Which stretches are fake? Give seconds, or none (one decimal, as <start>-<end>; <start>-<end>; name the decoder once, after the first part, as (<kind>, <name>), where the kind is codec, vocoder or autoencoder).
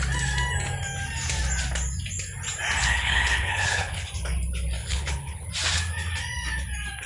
2.8-4.1 (codec, HILCodec); 4.8-5.5